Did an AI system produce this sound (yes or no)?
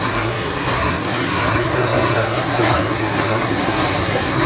yes